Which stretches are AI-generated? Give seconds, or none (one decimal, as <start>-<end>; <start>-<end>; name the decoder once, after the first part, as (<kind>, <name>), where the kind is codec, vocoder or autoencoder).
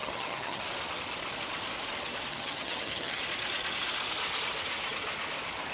0.0-0.6 (vocoder, HiFi-GAN); 2.3-3.2